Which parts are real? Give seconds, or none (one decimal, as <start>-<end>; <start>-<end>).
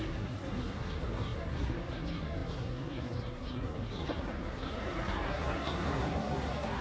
none